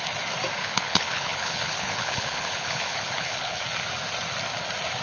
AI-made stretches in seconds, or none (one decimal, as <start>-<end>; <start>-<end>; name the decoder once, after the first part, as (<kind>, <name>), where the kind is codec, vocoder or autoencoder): 0.6-3.6 (codec, HILCodec)